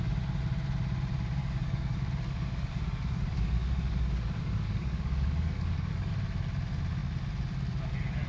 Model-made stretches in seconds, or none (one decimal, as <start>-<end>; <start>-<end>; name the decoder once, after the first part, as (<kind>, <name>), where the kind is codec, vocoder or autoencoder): 1.4-6.1 (codec, DAC)